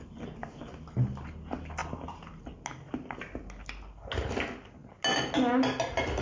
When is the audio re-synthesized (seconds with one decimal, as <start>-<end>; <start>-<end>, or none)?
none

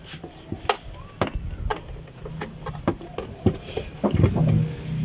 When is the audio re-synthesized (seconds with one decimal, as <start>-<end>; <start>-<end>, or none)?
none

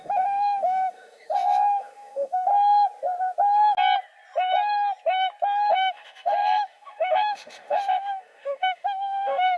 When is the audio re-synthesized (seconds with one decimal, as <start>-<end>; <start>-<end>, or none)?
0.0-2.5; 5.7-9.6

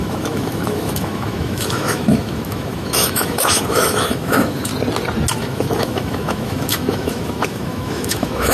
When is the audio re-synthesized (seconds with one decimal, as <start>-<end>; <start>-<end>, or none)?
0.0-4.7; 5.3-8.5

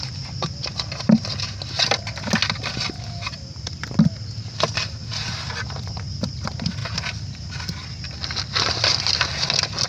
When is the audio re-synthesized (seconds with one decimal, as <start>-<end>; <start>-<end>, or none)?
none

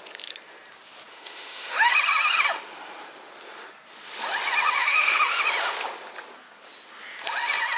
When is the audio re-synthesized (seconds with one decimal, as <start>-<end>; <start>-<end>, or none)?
1.1-1.9; 4.8-5.4

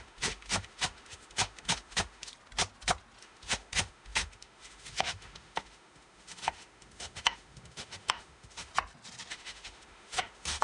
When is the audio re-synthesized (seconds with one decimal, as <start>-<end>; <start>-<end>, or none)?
0.0-2.3; 3.2-8.7; 9.3-10.6

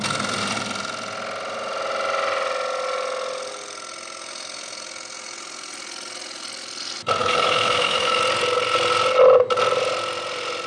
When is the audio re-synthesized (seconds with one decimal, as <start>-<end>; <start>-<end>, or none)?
7.2-8.2